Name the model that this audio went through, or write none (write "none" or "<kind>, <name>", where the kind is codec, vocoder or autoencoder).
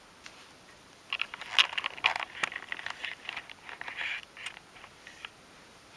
none